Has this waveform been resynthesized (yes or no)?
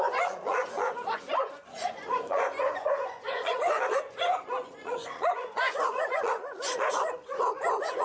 yes